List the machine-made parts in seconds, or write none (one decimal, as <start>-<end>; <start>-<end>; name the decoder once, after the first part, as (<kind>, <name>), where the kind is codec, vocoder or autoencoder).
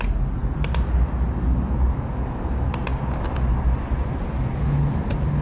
none